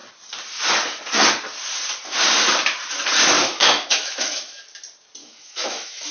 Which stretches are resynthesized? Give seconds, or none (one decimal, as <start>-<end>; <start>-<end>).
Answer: 3.4-4.6; 5.2-6.1